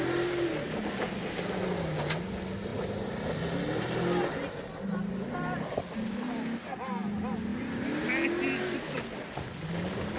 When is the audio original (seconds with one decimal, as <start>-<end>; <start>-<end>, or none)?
0.0-10.2